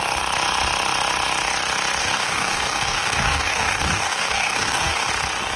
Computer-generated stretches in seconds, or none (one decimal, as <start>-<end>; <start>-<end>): 2.0-5.1